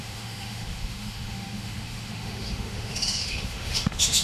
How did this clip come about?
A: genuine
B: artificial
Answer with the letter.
B